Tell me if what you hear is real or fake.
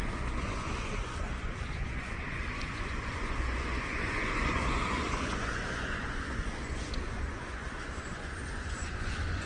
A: fake